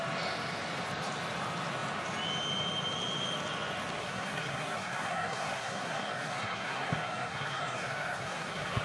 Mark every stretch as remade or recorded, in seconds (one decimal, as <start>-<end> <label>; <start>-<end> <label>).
0.0-4.0 recorded; 4.0-8.8 remade